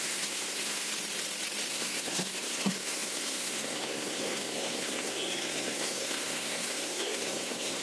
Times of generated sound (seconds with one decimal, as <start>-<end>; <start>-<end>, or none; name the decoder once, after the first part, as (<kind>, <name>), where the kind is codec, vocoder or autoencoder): 0.0-0.9 (codec, SNAC); 1.7-7.8